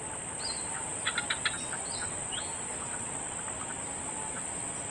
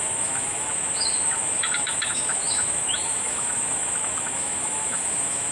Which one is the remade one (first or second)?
second